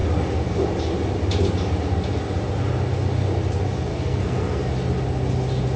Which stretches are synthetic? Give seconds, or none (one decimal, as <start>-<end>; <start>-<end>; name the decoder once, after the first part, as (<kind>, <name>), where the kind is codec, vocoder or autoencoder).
3.9-4.7 (codec, SNAC)